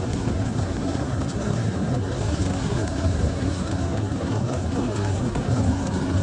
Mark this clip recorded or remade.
remade